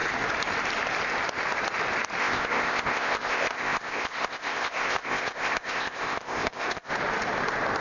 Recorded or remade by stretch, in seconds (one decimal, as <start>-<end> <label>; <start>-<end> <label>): 0.0-2.2 recorded; 2.2-6.9 remade; 6.9-7.8 recorded